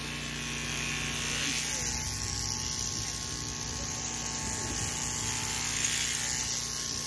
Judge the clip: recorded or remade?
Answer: recorded